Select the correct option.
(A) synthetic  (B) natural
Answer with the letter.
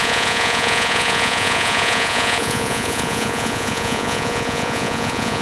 A